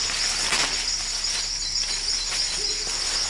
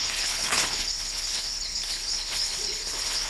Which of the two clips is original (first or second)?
first